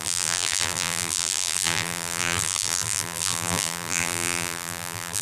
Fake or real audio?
fake